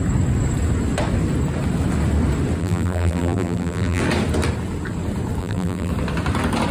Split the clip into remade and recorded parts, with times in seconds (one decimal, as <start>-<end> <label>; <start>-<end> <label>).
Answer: 0.0-2.6 recorded; 2.6-4.0 remade; 4.0-5.4 recorded; 5.4-5.9 remade; 5.9-6.7 recorded